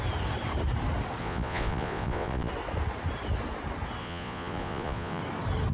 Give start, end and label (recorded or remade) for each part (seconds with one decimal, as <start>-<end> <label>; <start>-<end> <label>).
0.0-1.2 recorded; 1.2-2.5 remade; 2.5-4.0 recorded; 4.0-5.2 remade; 5.2-5.7 recorded